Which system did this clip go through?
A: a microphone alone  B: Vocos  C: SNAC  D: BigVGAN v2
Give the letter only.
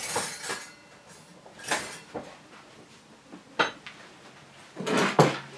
A